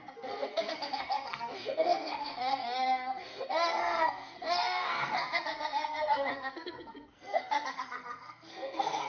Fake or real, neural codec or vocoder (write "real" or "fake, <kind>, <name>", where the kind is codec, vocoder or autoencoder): fake, codec, SNAC